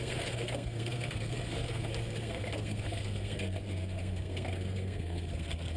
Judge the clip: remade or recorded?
remade